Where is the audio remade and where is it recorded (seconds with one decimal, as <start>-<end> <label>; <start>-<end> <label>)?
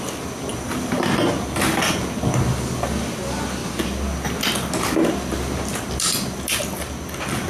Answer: 0.0-0.5 recorded; 0.5-1.1 remade; 1.1-7.5 recorded